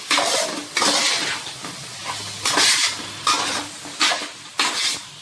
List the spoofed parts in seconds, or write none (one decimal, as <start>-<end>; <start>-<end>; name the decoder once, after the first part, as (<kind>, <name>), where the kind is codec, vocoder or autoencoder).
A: none